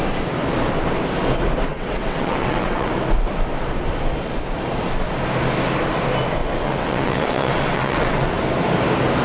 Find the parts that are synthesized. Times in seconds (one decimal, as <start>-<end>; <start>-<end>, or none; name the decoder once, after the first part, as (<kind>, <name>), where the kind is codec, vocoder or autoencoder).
1.7-2.9 (vocoder, WaveNeXt); 6.4-8.3